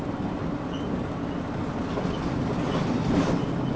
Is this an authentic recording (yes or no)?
yes